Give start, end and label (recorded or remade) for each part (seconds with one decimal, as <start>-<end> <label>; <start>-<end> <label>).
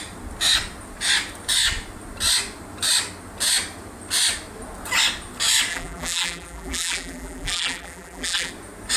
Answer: 0.0-5.7 recorded; 5.7-8.5 remade; 8.5-9.0 recorded